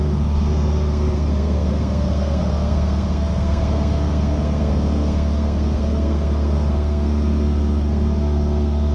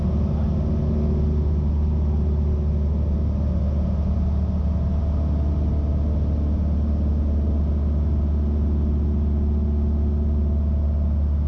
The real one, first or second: second